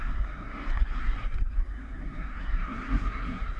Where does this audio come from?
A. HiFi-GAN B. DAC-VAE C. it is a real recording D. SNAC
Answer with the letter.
D